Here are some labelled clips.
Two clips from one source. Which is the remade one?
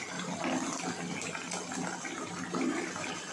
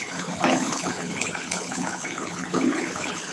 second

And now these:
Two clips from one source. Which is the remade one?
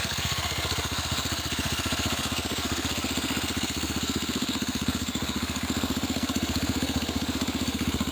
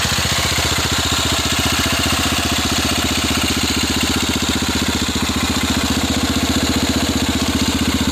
first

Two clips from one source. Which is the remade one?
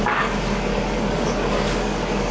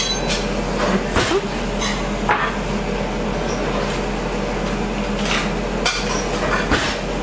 first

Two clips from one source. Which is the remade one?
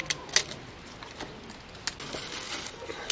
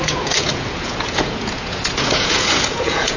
second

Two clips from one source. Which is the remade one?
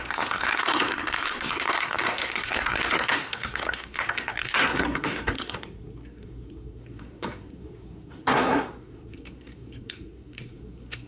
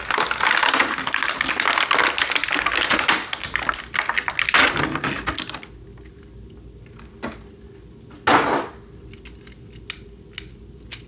first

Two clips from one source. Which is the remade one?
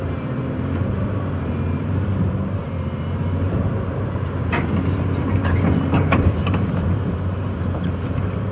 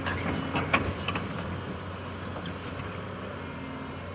first